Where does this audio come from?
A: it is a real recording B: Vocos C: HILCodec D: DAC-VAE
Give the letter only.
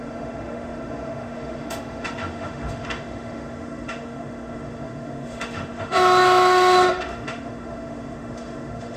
D